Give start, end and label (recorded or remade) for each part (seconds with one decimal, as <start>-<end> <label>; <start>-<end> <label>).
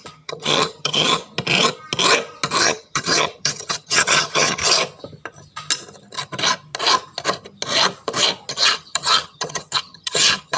0.0-1.2 remade; 1.2-2.6 recorded; 2.6-4.6 remade; 4.6-8.5 recorded; 8.5-10.6 remade